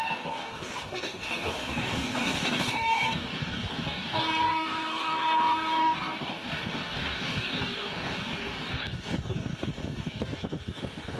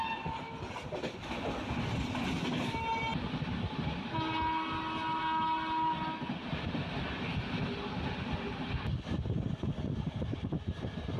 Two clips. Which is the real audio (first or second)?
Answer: second